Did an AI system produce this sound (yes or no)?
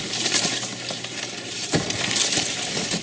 yes